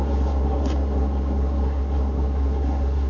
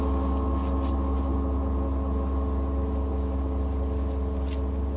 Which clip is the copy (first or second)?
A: first